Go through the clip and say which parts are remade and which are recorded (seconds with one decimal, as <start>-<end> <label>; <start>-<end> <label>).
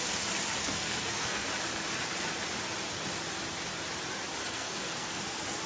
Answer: 0.0-0.6 recorded; 0.6-1.5 remade; 1.5-4.4 recorded; 4.4-5.2 remade; 5.2-5.7 recorded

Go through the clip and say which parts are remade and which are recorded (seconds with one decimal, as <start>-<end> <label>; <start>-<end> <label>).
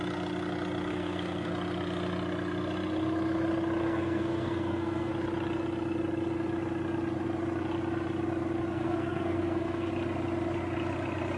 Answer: 0.0-0.9 recorded; 0.9-1.5 remade; 1.5-3.8 recorded; 3.8-5.1 remade; 5.1-8.7 recorded; 8.7-9.9 remade; 9.9-11.4 recorded